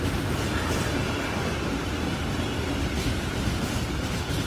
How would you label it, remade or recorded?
recorded